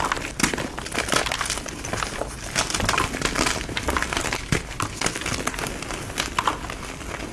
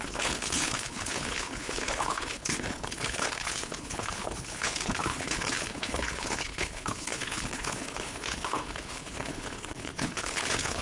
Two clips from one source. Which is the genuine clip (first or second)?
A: first